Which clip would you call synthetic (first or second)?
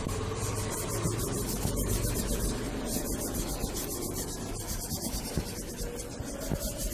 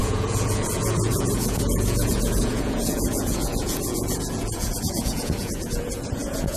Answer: second